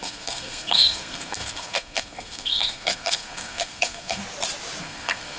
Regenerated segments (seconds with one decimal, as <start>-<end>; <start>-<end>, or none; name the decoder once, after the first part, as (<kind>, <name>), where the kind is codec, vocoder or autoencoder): 0.0-4.2 (codec, SNAC); 4.8-5.4